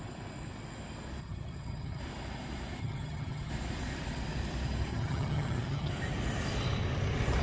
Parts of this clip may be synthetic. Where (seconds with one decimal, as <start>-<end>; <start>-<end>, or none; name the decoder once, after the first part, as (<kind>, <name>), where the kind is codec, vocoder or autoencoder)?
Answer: 1.2-2.0 (vocoder, HiFi-GAN); 2.8-3.5; 4.9-5.9